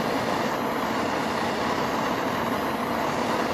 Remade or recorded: recorded